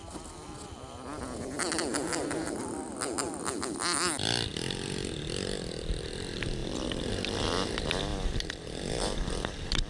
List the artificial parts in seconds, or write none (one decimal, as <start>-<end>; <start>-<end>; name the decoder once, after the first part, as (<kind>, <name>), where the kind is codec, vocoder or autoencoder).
4.5-6.0 (vocoder, BigVGAN v2); 6.6-7.1; 8.1-9.9